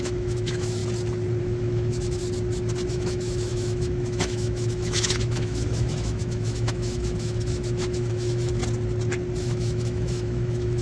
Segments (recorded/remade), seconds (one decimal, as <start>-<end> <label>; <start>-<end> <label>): 0.0-0.8 remade; 0.8-1.4 recorded; 1.4-2.2 remade; 2.2-2.9 recorded; 2.9-8.6 remade; 8.6-9.4 recorded; 9.4-10.8 remade